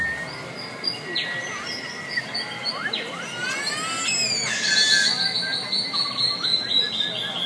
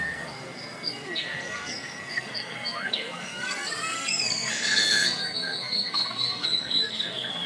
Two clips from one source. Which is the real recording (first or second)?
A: first